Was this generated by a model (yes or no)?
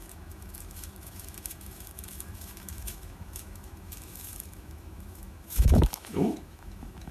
yes